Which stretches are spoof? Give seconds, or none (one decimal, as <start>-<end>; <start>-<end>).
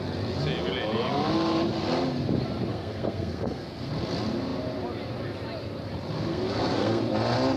2.7-3.9; 6.3-7.0